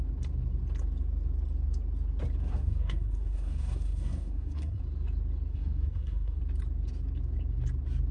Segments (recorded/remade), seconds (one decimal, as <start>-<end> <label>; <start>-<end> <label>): 0.0-2.4 recorded; 2.4-4.8 remade; 4.8-5.5 recorded; 5.5-6.4 remade; 6.4-8.1 recorded